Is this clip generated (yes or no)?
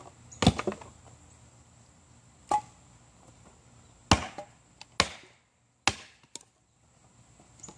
no